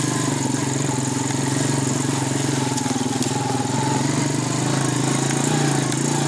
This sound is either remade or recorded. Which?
recorded